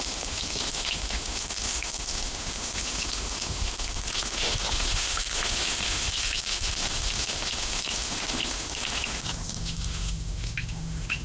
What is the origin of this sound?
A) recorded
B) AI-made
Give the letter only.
B